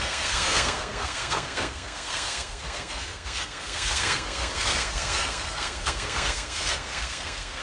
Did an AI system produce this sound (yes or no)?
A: yes